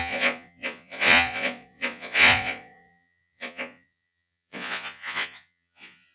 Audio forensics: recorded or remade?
remade